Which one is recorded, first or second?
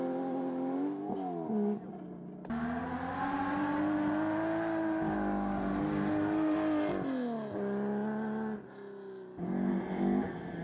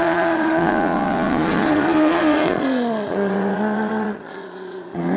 first